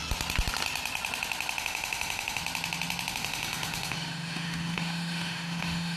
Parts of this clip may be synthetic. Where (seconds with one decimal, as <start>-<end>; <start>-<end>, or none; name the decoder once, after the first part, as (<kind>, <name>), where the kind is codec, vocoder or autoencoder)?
1.6-2.4 (autoencoder, DAC-VAE); 3.1-6.0